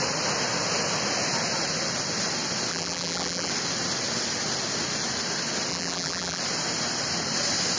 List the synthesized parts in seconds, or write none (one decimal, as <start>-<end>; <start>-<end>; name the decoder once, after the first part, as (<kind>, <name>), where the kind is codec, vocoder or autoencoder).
2.7-3.5 (vocoder, BigVGAN v2); 5.7-6.4